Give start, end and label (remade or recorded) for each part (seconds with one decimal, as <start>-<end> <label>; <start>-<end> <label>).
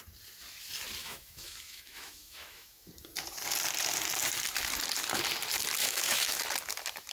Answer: 0.0-1.0 recorded; 1.0-2.9 remade; 2.9-5.8 recorded; 5.8-6.4 remade; 6.4-7.1 recorded